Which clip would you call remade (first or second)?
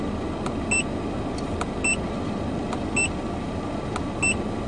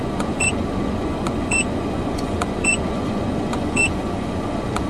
second